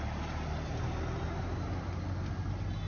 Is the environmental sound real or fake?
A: real